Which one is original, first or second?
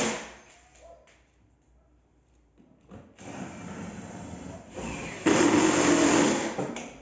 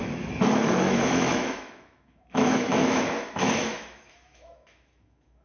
first